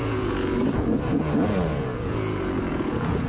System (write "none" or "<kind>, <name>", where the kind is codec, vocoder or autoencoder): vocoder, Vocos